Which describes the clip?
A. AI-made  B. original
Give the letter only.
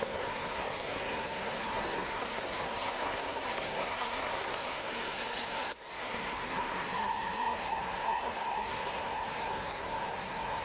A